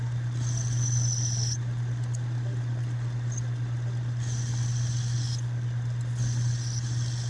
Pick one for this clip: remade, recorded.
recorded